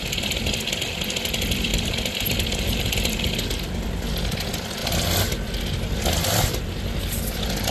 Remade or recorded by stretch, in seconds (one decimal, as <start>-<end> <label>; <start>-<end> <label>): 0.0-1.7 recorded; 1.7-3.3 remade; 3.3-7.7 recorded